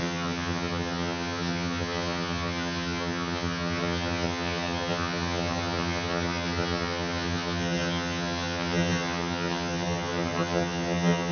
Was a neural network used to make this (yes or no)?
yes